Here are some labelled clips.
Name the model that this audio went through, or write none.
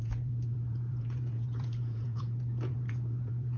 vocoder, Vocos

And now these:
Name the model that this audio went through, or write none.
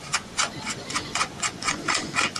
vocoder, Vocos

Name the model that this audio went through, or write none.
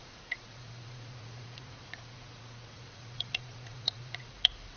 vocoder, Vocos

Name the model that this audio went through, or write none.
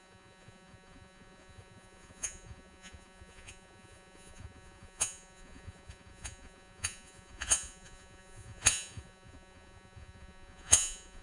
vocoder, Vocos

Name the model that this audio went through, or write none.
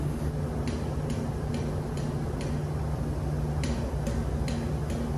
none